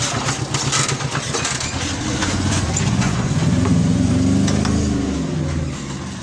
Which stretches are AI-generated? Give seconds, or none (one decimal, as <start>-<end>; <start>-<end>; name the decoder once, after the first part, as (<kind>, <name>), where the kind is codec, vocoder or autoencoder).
2.2-4.1 (vocoder, Vocos)